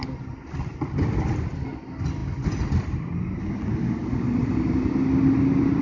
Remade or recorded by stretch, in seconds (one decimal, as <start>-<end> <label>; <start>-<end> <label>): 0.0-5.8 recorded